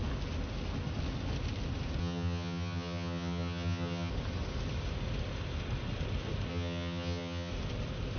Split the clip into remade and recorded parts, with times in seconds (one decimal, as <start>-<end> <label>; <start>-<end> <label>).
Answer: 0.0-2.0 recorded; 2.0-4.1 remade; 4.1-6.5 recorded; 6.5-7.5 remade; 7.5-8.2 recorded

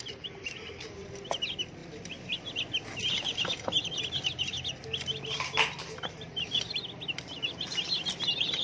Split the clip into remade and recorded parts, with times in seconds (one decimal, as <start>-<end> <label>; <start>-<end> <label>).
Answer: 0.0-8.6 recorded

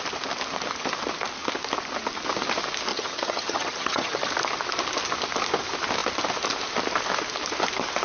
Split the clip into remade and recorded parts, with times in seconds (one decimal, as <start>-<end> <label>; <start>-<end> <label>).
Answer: 0.0-2.9 recorded; 2.9-4.3 remade; 4.3-8.0 recorded